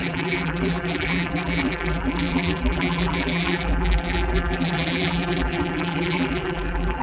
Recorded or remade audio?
remade